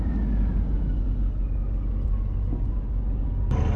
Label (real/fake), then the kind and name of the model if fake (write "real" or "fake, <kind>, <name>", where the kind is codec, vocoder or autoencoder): real